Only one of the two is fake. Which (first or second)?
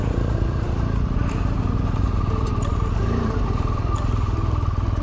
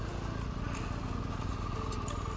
first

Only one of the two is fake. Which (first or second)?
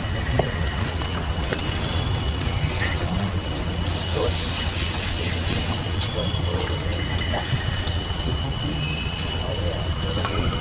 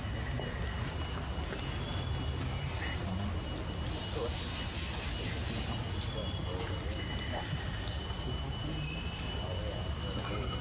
first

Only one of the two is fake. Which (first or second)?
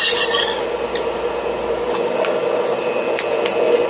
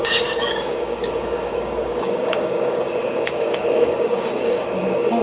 second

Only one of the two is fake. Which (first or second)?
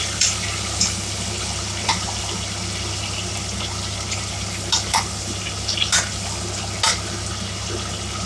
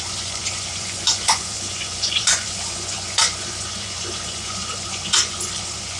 second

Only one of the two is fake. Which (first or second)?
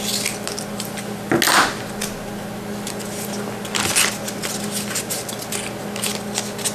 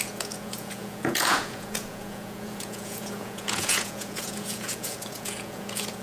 second